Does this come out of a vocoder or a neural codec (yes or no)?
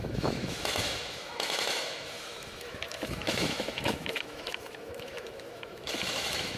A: yes